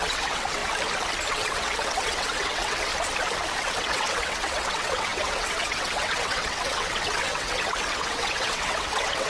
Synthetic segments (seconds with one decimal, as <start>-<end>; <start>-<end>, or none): 0.0-0.6; 1.3-2.9; 3.6-9.3

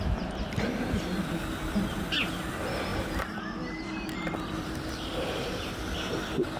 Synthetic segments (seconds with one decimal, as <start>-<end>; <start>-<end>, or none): none

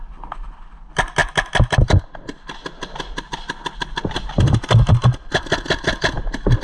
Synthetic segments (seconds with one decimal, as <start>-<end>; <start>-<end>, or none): none

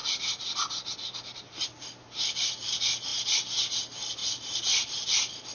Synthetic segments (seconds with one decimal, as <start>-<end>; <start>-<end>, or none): none

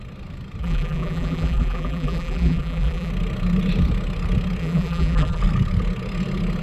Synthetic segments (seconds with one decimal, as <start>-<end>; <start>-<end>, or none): 0.6-3.1; 4.6-5.4

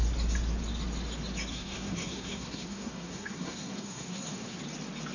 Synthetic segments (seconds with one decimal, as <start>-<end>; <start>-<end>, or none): 1.5-4.6

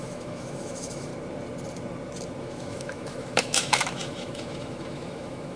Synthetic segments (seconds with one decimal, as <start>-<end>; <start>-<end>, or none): 0.0-1.1; 2.4-5.6